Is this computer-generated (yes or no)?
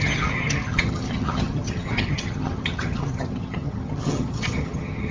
yes